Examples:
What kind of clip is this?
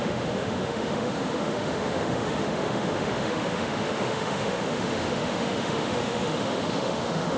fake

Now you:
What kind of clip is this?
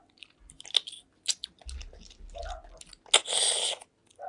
real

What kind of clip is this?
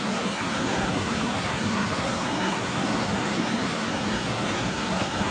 fake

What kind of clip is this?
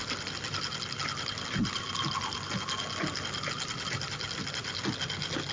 real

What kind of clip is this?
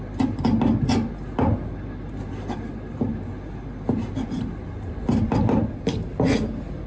real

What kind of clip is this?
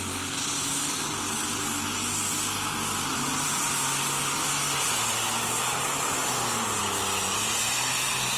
real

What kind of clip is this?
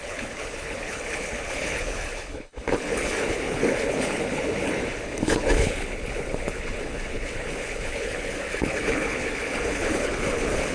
fake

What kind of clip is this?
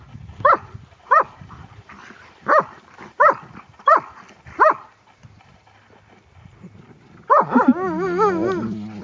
real